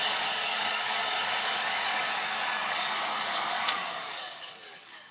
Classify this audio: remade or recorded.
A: remade